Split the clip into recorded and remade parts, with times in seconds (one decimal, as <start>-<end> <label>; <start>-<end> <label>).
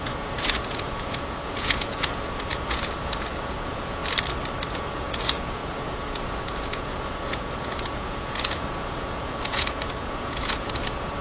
0.0-4.0 remade; 4.0-4.7 recorded; 4.7-11.2 remade